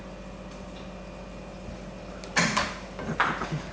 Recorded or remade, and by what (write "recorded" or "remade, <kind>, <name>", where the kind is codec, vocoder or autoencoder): recorded